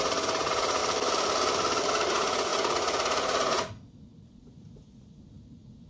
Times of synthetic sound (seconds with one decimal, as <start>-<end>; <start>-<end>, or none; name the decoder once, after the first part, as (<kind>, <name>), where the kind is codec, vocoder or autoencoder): 0.0-0.8 (vocoder, Vocos); 2.1-5.9